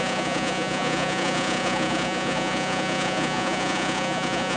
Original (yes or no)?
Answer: no